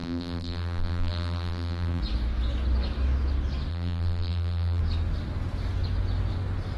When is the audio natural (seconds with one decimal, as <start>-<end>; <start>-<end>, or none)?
2.0-3.7; 4.8-6.8